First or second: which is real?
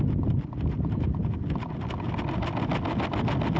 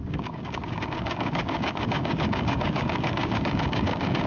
first